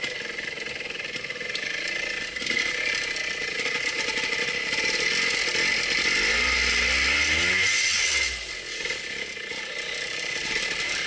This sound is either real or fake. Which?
real